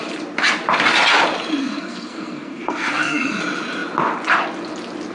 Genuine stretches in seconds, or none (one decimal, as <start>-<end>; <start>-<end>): 0.0-1.6; 3.4-5.1